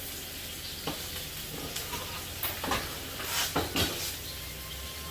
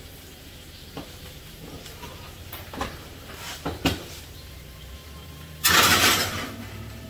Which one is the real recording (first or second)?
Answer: first